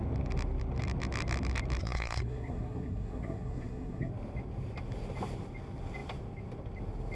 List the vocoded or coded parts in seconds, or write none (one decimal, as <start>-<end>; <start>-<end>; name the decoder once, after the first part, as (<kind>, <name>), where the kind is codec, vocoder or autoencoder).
1.8-4.1 (codec, SNAC)

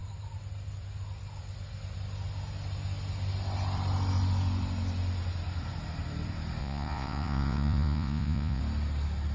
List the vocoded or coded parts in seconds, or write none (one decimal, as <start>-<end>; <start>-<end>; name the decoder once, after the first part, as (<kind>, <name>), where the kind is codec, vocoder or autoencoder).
6.6-8.6 (vocoder, Vocos)

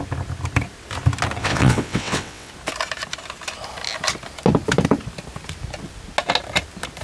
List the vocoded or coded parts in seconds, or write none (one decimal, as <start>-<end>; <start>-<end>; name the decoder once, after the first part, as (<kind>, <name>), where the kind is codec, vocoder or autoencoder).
1.4-2.5 (vocoder, WaveNeXt)

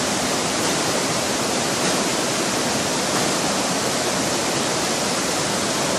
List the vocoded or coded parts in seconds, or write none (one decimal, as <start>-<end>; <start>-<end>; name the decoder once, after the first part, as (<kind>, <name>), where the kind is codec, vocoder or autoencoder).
0.0-2.1 (vocoder, BigVGAN v2)